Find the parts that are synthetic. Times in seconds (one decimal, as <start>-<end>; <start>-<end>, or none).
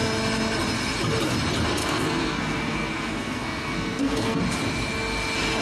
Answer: 1.8-4.4